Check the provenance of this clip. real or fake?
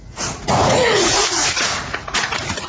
fake